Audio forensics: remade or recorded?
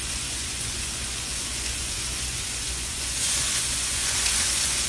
remade